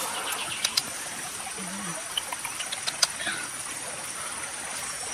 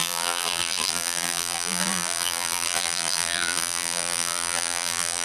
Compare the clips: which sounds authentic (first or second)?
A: first